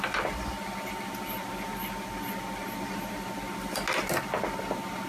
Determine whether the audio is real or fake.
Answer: real